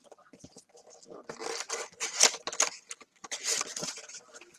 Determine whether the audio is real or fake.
real